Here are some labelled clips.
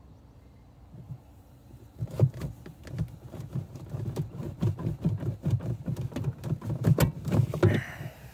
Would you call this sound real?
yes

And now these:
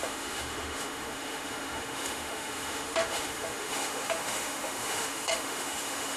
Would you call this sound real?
no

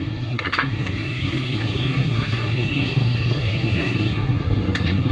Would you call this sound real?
no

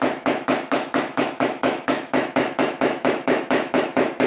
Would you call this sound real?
no